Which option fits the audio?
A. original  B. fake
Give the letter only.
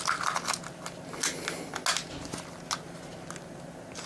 A